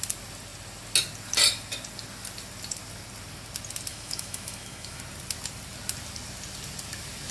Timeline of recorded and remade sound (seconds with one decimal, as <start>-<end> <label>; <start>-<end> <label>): 0.0-3.9 recorded; 3.9-5.0 remade; 5.0-7.3 recorded